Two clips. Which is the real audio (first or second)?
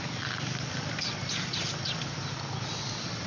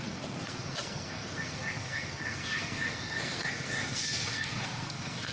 first